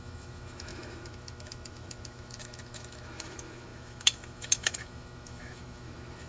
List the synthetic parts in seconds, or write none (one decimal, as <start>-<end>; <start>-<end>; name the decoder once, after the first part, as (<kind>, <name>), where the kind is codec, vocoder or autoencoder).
0.0-6.3 (autoencoder, DAC-VAE)